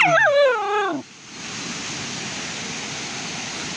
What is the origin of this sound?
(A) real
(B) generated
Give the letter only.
A